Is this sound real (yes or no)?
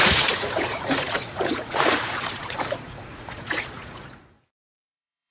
no